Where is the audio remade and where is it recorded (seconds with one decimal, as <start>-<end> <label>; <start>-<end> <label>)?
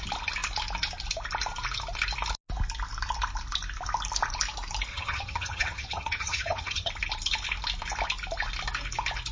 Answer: 0.0-4.9 recorded; 4.9-6.9 remade; 6.9-9.3 recorded